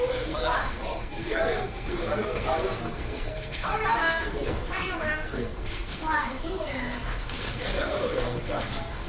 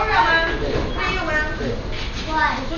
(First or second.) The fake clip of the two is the first